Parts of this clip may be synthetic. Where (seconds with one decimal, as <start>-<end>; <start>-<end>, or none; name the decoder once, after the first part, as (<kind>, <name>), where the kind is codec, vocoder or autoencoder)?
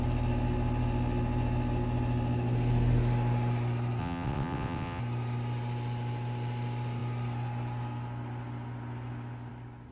4.0-5.0 (vocoder, WaveNeXt)